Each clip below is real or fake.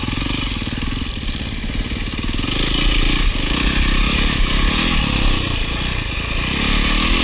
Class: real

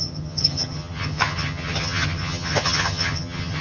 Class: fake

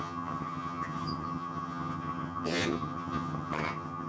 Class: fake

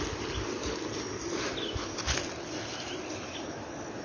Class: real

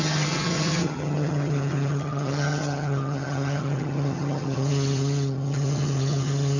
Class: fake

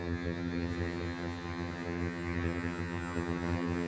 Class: fake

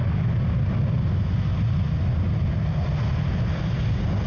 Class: real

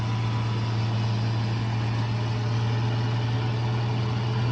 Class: real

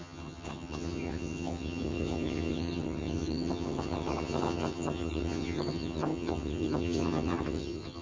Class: fake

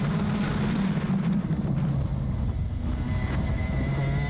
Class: real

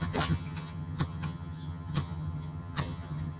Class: fake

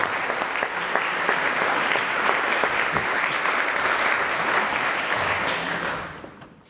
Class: real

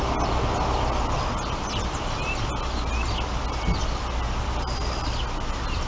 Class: real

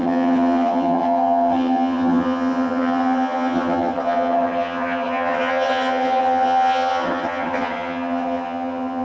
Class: fake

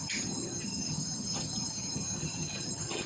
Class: fake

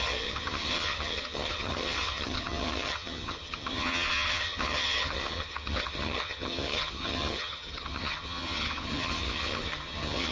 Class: fake